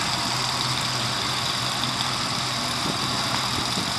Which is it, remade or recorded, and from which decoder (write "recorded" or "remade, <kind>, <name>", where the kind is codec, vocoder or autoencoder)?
recorded